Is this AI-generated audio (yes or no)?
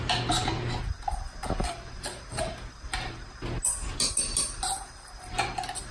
no